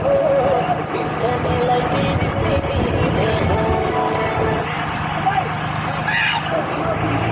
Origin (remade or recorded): recorded